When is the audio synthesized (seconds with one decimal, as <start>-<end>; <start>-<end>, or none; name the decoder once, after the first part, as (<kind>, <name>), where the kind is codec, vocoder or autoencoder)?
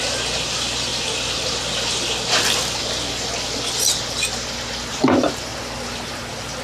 0.0-0.9 (vocoder, BigVGAN v2); 4.9-5.5; 6.1-6.6